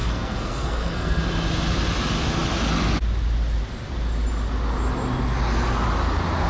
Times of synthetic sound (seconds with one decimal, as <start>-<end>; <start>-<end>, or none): 0.0-1.2